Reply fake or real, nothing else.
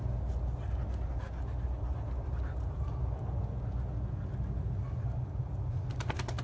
real